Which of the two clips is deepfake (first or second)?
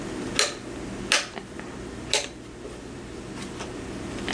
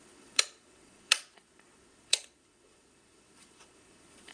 second